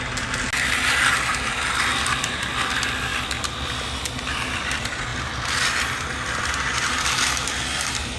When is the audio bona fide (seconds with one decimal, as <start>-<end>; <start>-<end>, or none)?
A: 0.0-3.1; 3.7-5.1; 7.0-8.2